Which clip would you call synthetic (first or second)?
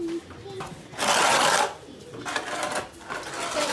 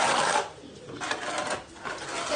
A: second